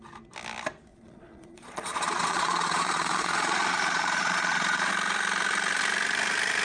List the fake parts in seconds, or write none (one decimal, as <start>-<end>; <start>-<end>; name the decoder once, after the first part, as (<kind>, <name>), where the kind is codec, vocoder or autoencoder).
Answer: 0.9-4.9 (vocoder, Vocos)